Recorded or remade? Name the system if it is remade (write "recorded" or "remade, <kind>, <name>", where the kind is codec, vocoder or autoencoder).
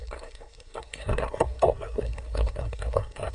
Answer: remade, codec, SNAC